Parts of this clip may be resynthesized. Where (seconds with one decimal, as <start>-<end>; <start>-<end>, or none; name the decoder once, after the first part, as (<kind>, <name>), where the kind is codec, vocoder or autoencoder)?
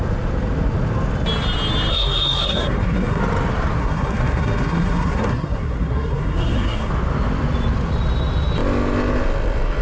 1.9-3.2 (codec, SNAC); 3.8-6.9